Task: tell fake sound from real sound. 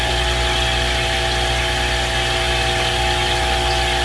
real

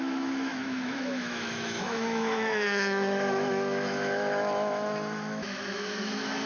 fake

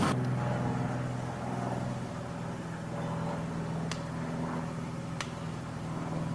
real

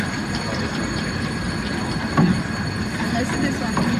real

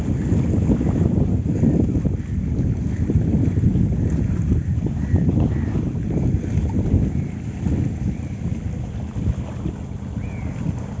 real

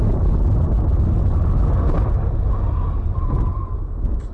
real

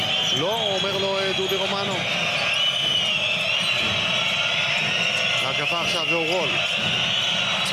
real